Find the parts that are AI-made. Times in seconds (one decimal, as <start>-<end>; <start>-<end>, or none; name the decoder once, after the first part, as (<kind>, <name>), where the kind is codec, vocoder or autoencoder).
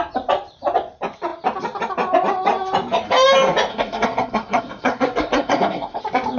3.7-6.0 (codec, SNAC)